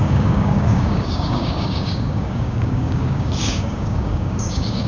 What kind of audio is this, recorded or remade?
remade